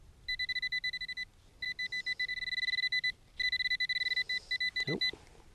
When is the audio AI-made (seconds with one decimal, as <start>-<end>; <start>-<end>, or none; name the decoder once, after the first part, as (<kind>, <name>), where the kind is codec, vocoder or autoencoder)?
none